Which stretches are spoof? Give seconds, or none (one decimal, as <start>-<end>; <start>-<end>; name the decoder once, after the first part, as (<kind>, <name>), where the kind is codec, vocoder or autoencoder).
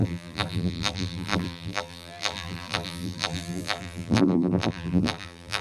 0.0-5.6 (vocoder, BigVGAN v2)